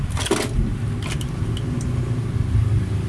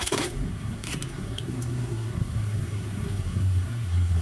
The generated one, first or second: second